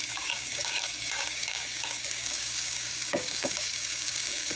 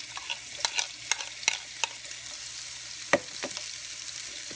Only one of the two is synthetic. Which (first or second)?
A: first